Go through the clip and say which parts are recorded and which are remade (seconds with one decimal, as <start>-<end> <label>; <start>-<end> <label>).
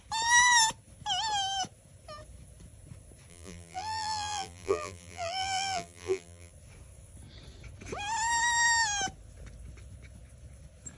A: 0.0-3.3 recorded; 3.3-6.5 remade; 6.5-11.0 recorded